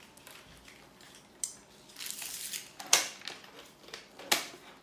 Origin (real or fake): real